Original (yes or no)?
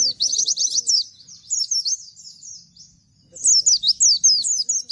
yes